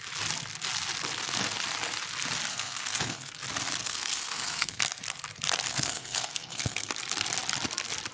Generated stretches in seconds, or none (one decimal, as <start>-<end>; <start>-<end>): 2.5-3.3; 3.8-4.8; 5.7-6.9